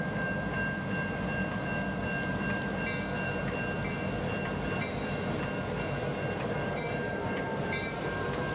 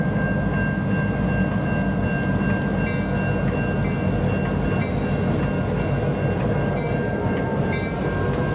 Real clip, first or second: second